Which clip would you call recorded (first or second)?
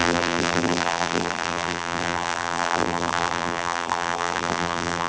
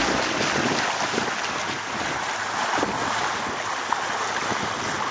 second